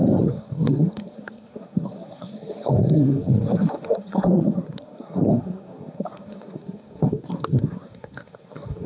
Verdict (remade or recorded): remade